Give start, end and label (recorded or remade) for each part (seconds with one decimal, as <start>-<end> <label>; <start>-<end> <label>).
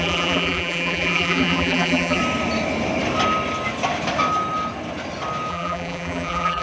0.0-2.2 remade; 2.2-5.5 recorded; 5.5-6.6 remade